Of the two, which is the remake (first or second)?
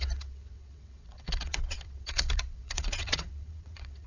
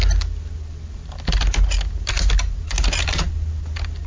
first